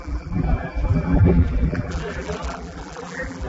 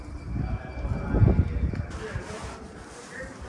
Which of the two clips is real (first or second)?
second